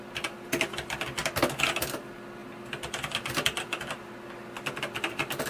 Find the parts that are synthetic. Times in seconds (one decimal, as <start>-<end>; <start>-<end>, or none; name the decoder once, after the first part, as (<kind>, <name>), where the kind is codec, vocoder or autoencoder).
none